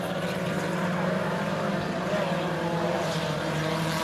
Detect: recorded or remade remade